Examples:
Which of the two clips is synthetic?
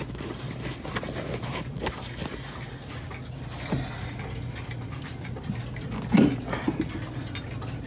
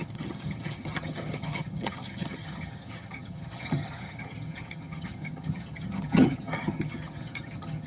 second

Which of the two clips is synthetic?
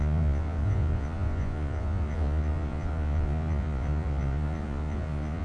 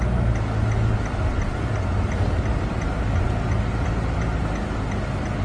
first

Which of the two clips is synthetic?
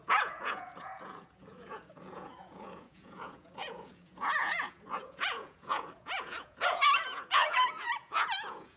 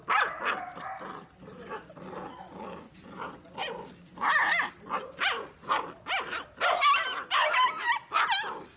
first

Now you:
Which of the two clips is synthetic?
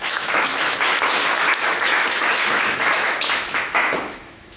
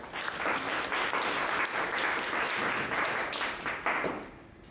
first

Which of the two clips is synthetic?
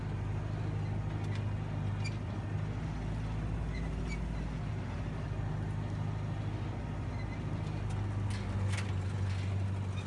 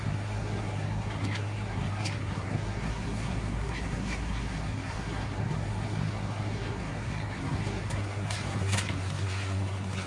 second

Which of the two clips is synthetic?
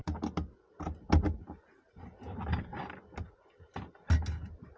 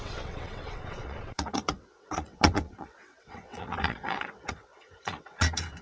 second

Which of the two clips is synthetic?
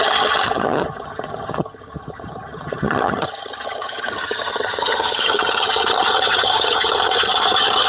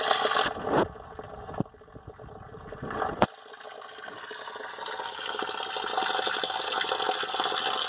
first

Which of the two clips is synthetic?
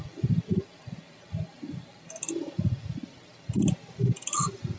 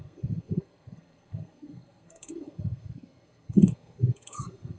second